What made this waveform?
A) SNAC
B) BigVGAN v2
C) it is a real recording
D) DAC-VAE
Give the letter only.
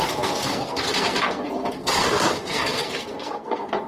A